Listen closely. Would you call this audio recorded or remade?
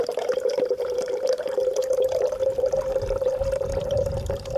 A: remade